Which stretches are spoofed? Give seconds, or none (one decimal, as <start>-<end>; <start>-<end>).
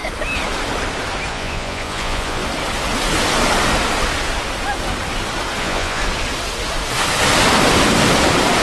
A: 1.3-2.4; 5.6-6.0